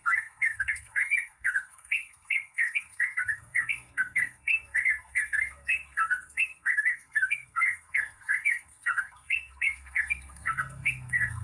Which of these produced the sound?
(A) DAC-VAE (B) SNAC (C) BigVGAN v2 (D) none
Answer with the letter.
B